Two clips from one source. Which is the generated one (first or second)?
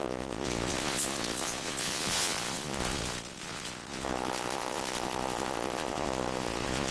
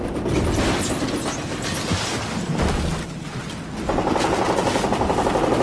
first